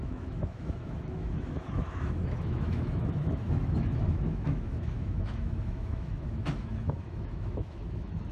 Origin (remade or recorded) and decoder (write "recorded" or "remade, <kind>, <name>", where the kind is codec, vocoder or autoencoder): remade, autoencoder, DAC-VAE